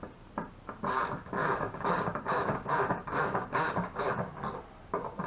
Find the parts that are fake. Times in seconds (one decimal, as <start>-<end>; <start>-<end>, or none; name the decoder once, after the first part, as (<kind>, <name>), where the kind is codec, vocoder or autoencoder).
1.4-4.0 (codec, DAC)